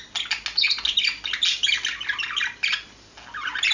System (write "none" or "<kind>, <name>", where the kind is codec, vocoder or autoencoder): none